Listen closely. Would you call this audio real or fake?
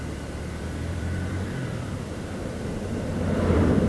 fake